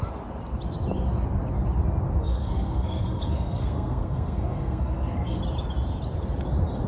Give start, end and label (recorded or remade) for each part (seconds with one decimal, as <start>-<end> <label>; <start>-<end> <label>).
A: 0.0-2.2 recorded; 2.2-5.4 remade; 5.4-6.9 recorded